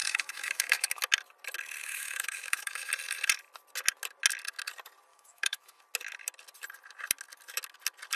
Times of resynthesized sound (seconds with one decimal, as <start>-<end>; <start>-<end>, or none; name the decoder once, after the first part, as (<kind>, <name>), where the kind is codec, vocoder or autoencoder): 0.0-1.0 (autoencoder, DAC-VAE); 1.8-2.9; 5.1-5.8